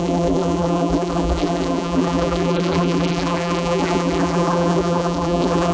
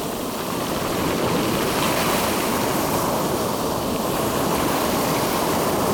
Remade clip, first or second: first